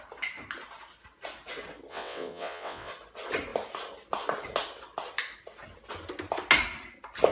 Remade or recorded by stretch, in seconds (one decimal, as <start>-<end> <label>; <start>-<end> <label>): 0.0-1.9 recorded; 1.9-2.9 remade; 2.9-7.3 recorded